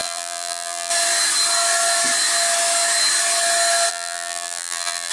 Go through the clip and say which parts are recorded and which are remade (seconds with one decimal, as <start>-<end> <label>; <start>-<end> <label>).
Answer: 0.0-0.9 remade; 0.9-3.9 recorded; 3.9-5.1 remade